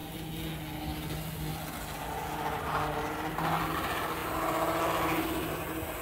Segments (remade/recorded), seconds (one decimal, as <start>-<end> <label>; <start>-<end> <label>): 0.0-6.0 recorded